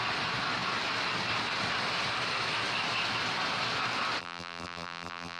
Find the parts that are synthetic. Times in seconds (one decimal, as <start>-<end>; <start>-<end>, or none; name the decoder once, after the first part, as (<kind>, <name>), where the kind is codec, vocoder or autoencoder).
4.2-5.4 (vocoder, BigVGAN v2)

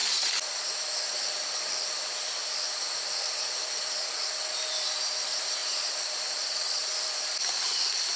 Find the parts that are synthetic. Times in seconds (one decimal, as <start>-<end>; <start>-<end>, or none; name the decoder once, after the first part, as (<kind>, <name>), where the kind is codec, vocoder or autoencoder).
none

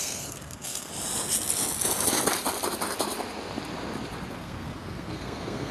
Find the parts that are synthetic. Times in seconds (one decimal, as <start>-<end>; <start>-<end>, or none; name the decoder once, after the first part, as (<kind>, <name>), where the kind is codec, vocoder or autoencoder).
0.0-0.9 (codec, SNAC); 4.3-5.7

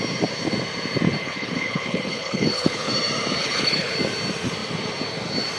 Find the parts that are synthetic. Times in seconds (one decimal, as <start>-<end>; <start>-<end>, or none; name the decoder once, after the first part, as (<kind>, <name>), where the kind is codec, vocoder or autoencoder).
1.2-2.9 (codec, HILCodec); 3.4-3.9

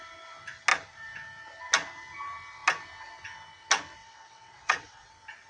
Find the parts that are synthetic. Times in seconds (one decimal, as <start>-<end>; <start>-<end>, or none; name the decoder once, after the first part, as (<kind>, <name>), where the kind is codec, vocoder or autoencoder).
4.0-5.1 (vocoder, WaveNeXt)

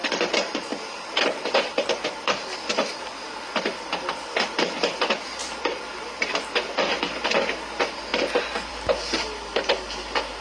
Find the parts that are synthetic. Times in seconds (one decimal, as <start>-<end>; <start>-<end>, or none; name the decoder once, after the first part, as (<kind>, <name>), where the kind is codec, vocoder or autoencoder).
0.7-2.0 (vocoder, BigVGAN v2); 5.4-6.4